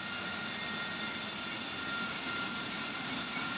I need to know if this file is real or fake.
real